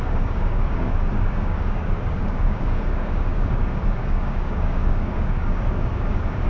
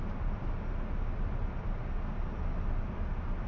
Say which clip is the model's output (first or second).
first